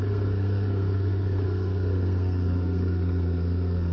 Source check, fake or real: fake